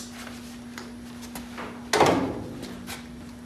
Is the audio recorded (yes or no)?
yes